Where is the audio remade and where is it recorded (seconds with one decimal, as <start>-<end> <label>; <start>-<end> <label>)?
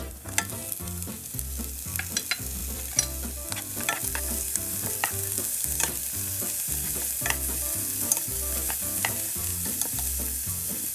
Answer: 0.0-10.9 recorded